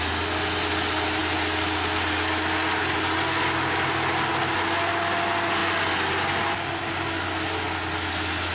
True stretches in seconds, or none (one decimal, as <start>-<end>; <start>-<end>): 0.0-8.5